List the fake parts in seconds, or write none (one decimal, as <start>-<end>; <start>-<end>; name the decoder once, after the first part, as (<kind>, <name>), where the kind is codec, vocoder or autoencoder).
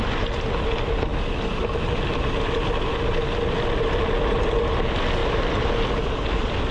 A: none